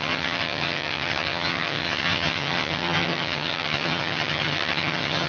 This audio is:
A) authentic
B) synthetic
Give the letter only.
B